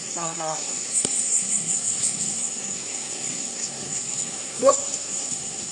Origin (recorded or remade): remade